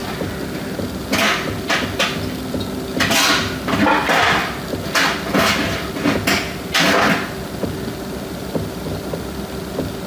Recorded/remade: recorded